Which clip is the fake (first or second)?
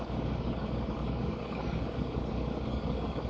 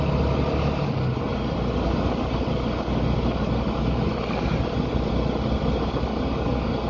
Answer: first